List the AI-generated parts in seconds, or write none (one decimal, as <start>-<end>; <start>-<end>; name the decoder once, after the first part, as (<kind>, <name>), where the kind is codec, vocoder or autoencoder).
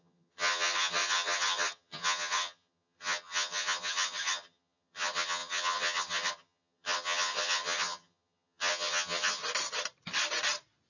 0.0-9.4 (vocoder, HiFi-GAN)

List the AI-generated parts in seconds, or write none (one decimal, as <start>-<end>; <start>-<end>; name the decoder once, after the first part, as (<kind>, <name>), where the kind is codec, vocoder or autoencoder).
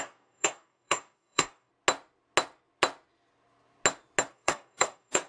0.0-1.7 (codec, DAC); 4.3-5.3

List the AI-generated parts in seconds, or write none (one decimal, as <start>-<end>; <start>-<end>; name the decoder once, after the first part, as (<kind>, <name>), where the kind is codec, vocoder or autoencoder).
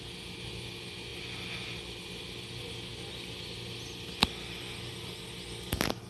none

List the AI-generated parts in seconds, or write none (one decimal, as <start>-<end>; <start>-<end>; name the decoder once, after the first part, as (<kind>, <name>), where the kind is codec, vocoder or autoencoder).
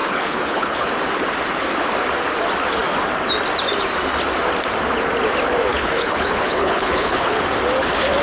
0.0-0.9 (codec, HILCodec); 5.7-7.4